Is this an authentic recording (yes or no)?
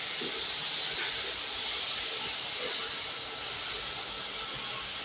yes